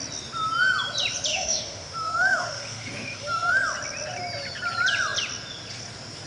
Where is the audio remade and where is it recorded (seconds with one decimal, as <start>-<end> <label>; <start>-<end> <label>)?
0.0-1.3 recorded; 1.3-3.6 remade; 3.6-6.3 recorded